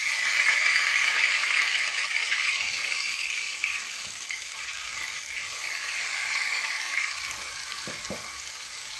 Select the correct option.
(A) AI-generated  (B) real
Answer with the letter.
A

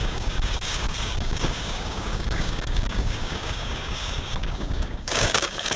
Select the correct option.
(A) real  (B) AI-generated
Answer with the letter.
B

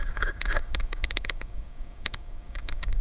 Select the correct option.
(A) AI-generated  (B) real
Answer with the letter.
A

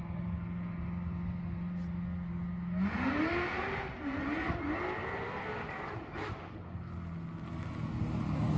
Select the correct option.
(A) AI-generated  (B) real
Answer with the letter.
B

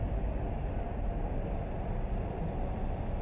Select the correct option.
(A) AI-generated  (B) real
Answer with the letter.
B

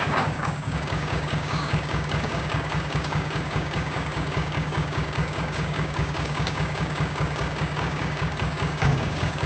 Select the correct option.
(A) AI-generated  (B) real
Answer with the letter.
A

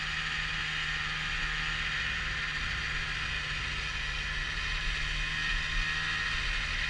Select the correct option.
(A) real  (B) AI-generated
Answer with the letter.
A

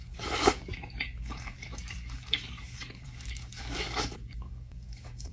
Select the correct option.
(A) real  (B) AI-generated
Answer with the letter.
B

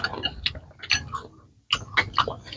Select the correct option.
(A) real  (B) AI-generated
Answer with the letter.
A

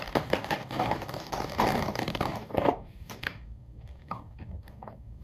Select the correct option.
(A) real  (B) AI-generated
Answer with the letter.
B